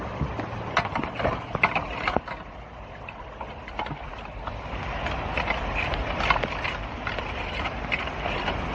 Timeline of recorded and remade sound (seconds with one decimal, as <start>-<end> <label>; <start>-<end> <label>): 0.0-8.7 recorded